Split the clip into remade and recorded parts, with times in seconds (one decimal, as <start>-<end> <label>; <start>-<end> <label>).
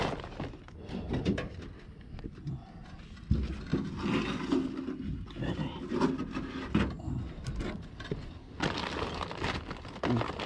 0.0-10.5 recorded